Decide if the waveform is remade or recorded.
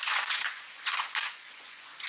remade